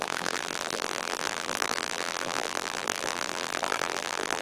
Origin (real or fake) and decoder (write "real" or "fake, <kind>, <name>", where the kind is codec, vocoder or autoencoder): fake, vocoder, BigVGAN v2